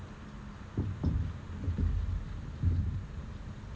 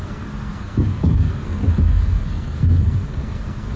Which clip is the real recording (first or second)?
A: first